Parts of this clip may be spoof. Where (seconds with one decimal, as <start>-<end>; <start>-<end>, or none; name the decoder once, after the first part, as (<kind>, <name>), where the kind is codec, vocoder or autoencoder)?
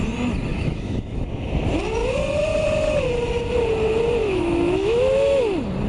0.5-1.5 (autoencoder, DAC-VAE); 4.2-5.4